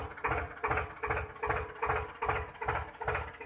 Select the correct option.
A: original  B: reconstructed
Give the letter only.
A